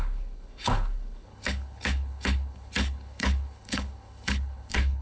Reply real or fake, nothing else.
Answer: fake